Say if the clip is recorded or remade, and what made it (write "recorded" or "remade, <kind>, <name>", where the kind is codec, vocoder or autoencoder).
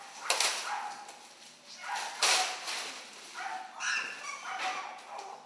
recorded